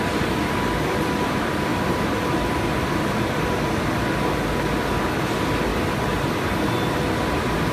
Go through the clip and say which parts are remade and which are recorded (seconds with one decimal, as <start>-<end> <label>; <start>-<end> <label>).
0.0-1.7 recorded; 1.7-3.4 remade; 3.4-5.7 recorded; 5.7-6.3 remade; 6.3-7.7 recorded